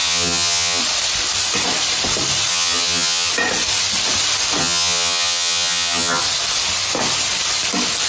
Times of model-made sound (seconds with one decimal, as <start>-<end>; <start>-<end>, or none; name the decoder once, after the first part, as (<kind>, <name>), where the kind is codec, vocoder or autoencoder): 0.0-0.8 (vocoder, HiFi-GAN); 2.5-3.3; 4.6-6.2